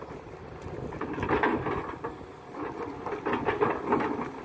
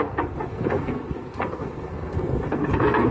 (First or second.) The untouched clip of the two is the first